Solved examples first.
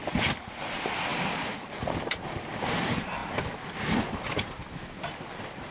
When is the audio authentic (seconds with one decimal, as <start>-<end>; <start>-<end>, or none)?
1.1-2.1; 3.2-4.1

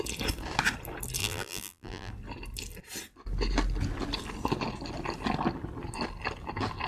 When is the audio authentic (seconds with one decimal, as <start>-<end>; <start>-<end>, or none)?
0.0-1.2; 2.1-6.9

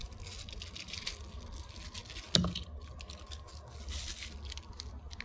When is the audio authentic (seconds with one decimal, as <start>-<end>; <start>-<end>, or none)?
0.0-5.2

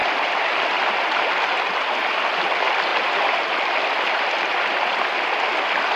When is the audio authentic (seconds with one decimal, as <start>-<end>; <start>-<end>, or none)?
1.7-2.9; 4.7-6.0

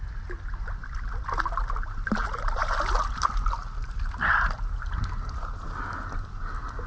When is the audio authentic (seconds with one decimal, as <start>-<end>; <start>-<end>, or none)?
0.0-6.9